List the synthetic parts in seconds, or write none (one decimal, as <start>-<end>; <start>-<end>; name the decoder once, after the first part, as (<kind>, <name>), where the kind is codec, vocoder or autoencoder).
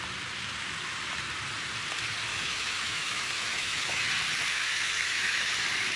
2.3-4.1 (autoencoder, DAC-VAE); 4.5-5.5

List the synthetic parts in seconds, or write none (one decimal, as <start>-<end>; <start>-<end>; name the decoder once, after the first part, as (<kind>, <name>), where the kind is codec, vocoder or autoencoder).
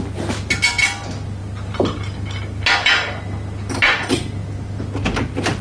none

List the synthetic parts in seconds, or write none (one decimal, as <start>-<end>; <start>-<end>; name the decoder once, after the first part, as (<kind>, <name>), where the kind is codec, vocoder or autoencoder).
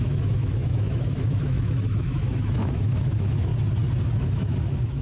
0.0-3.5 (autoencoder, DAC-VAE); 4.1-5.0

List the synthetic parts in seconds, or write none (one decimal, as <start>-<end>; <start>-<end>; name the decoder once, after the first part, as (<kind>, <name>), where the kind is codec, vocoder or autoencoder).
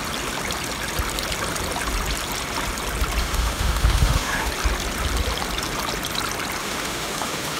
3.2-4.5 (autoencoder, DAC-VAE); 6.6-7.6